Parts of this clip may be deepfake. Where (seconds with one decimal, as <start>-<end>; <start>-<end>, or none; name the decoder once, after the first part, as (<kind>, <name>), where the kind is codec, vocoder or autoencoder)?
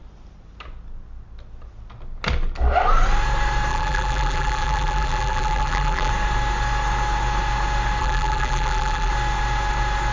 3.7-6.1 (vocoder, BigVGAN v2); 8.0-9.1